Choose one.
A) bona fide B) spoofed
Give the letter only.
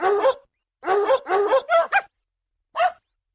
A